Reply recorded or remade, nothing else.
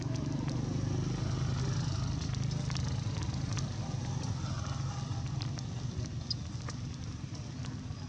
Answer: recorded